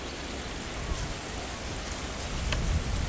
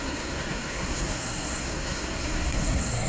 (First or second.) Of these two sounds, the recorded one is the first